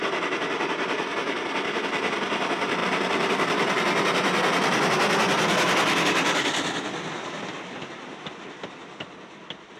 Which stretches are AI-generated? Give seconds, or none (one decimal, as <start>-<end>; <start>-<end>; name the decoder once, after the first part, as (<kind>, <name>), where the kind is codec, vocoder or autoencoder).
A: none